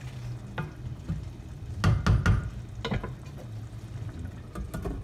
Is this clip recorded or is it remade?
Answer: recorded